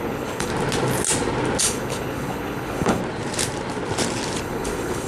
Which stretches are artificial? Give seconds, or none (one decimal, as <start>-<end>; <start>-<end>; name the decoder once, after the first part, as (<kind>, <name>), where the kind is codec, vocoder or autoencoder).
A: 0.0-0.5 (codec, HILCodec); 1.6-3.0; 4.4-5.1